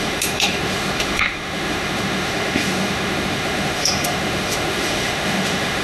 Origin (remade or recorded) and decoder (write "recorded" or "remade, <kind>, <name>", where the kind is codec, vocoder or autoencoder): remade, autoencoder, DAC-VAE